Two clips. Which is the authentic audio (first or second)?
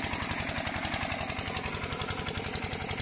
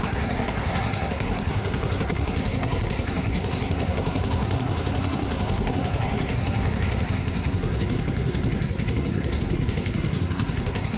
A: first